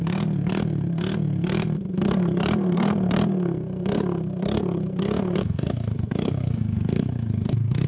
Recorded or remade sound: remade